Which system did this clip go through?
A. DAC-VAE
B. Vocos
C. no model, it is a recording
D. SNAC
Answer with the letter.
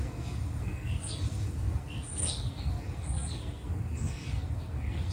D